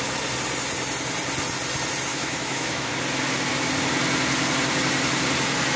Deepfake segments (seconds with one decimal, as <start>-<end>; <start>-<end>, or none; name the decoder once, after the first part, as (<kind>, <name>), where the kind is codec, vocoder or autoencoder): 2.1-2.9 (autoencoder, DAC-VAE)

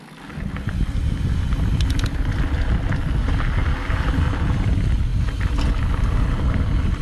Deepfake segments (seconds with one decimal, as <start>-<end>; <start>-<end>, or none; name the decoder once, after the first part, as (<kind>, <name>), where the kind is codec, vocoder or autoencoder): none

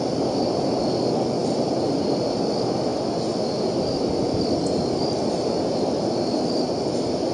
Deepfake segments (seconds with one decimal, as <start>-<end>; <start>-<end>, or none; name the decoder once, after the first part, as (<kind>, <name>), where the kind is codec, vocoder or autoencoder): none